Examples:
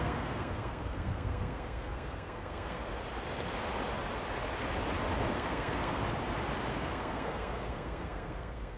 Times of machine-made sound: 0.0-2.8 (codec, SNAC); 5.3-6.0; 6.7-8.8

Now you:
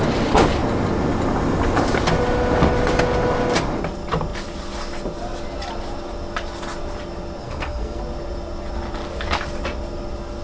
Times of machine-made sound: 7.4-8.0 (codec, SNAC)